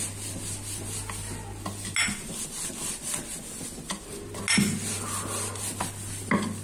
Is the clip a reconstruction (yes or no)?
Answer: no